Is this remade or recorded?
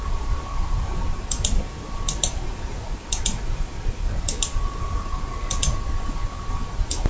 recorded